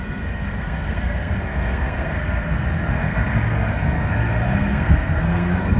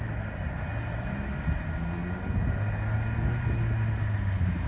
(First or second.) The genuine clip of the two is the second